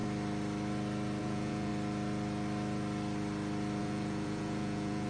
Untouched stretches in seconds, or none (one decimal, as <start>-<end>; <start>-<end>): 0.0-1.2; 1.7-3.8